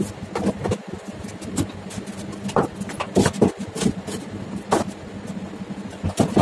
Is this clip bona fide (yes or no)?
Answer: yes